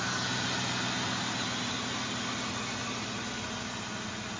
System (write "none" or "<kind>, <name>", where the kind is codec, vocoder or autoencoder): none